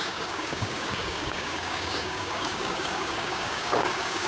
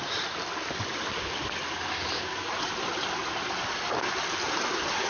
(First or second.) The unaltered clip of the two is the second